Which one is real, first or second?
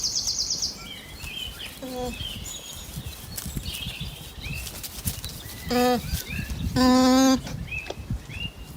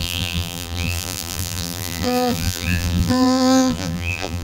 first